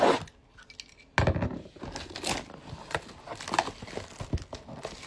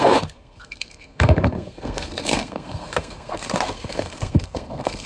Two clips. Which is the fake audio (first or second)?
second